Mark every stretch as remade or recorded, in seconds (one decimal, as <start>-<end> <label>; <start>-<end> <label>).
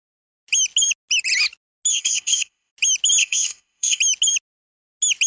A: 0.0-1.9 recorded; 1.9-2.7 remade; 2.7-3.2 recorded; 3.2-4.0 remade; 4.0-5.3 recorded